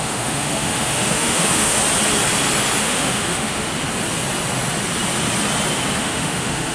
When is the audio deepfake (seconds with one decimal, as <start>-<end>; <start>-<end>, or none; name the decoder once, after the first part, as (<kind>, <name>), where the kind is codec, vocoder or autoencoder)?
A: 0.0-1.8 (autoencoder, DAC-VAE); 2.8-3.7; 6.0-6.7